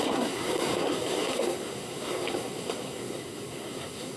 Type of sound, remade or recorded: remade